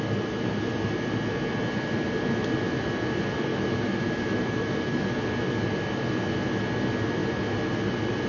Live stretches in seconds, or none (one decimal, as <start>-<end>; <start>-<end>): 0.0-3.5; 5.2-8.3